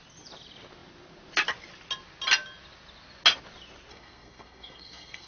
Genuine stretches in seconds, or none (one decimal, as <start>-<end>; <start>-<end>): 0.0-3.9